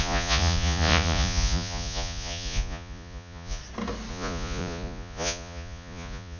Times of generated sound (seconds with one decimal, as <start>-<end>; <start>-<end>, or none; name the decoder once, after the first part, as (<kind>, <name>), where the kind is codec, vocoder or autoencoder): 0.0-3.6 (vocoder, Vocos); 4.1-6.4